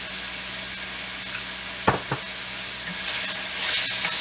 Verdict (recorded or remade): recorded